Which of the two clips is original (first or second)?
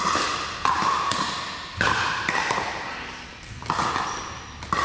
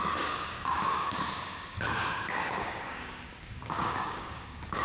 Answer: first